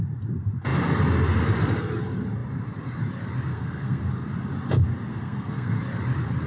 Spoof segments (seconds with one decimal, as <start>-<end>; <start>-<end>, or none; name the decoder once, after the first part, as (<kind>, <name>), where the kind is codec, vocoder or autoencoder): 3.5-4.0 (codec, SNAC); 5.1-5.8